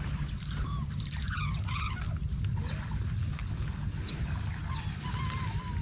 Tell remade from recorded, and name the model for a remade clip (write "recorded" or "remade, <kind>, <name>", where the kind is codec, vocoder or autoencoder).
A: recorded